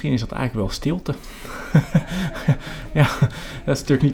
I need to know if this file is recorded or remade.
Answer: remade